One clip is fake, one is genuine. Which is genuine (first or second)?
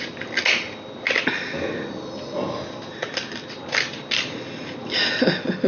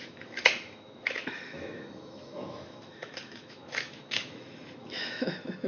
first